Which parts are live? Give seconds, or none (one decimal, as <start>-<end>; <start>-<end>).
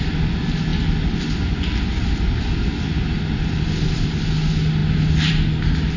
0.0-6.0